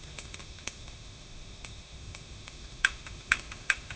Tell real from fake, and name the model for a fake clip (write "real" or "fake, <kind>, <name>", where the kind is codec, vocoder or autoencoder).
fake, autoencoder, DAC-VAE